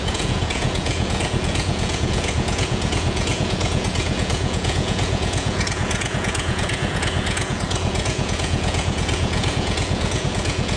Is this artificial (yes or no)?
yes